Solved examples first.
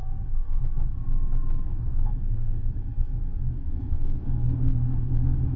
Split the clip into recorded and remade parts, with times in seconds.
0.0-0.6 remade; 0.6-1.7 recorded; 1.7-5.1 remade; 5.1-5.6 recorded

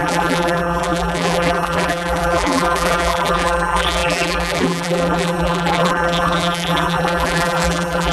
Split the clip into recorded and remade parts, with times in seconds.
0.0-8.1 remade

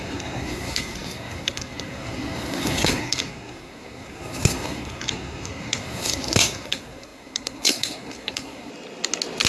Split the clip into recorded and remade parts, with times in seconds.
0.0-8.7 remade; 8.7-9.5 recorded

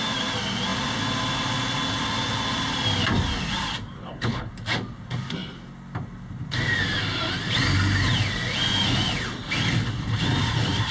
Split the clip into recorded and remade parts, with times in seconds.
0.0-4.0 recorded; 4.0-4.5 remade; 4.5-10.9 recorded

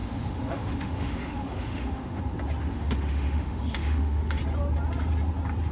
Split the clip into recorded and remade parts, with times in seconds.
0.0-2.2 remade; 2.2-2.7 recorded; 2.7-4.4 remade; 4.4-5.7 recorded

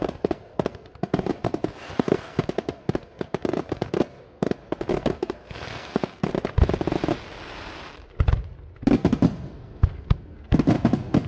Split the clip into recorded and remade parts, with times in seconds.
0.0-6.3 remade; 6.3-8.9 recorded; 8.9-11.3 remade